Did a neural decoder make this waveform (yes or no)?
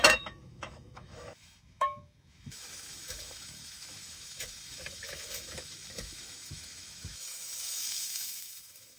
yes